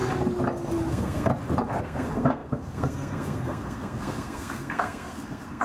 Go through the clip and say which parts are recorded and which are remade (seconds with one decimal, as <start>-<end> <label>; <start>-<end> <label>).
0.0-0.9 recorded; 0.9-1.3 remade; 1.3-1.8 recorded; 1.8-5.6 remade